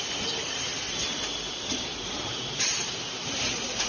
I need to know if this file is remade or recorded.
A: recorded